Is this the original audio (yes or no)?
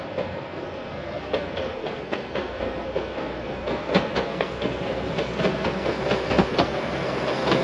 no